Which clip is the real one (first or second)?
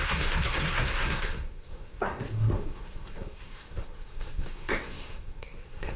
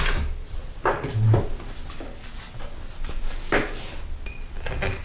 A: second